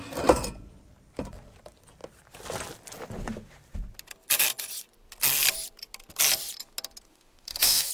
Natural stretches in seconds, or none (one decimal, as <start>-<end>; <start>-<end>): 0.0-7.1

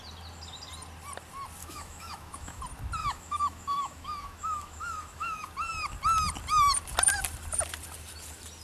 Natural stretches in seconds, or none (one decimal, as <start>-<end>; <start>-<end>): 0.0-1.6; 2.6-3.0; 5.5-8.6

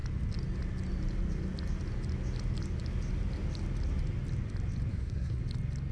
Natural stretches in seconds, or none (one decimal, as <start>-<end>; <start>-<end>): 0.0-4.9; 5.4-5.9

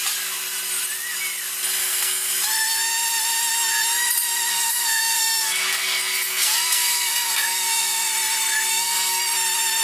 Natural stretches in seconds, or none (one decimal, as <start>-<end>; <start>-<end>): 0.0-1.8; 2.3-4.5; 8.1-8.7; 9.2-9.8

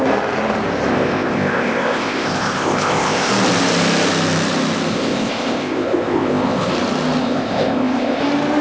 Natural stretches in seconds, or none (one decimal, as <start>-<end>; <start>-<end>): 0.0-0.9; 3.3-4.9; 6.7-7.2; 8.2-8.6

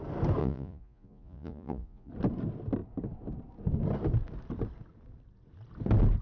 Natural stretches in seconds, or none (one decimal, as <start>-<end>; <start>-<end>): 0.0-0.4; 2.1-6.2

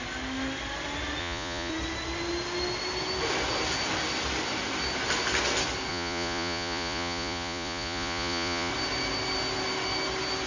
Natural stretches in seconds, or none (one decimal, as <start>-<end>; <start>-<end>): 0.0-1.2; 1.7-5.9; 8.7-10.5